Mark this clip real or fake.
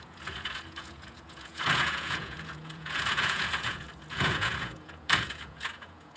fake